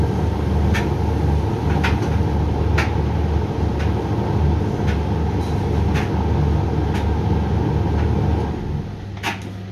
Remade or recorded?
recorded